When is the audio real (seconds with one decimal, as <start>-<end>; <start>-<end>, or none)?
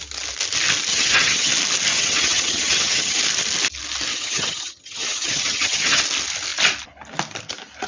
0.0-0.9; 1.5-1.9; 3.2-4.1; 6.0-7.9